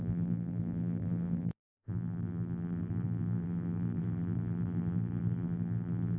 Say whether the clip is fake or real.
fake